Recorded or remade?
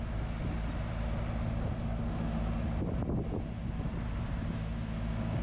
recorded